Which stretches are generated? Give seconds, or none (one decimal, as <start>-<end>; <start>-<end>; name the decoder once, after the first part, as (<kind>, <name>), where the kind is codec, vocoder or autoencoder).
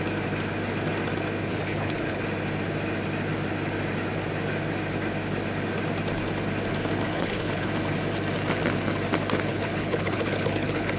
1.5-2.2 (codec, HILCodec); 7.1-7.7; 9.5-11.0